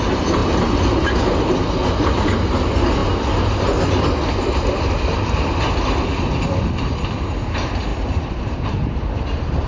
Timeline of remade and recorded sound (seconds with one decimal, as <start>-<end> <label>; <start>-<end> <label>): 0.0-0.4 recorded; 0.4-1.1 remade; 1.1-7.9 recorded; 7.9-9.0 remade; 9.0-9.7 recorded